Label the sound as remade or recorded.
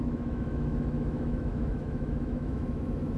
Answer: remade